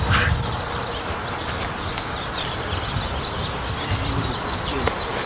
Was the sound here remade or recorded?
recorded